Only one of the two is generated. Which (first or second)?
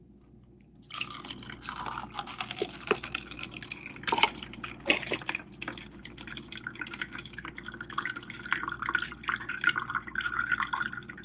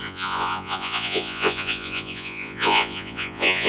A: second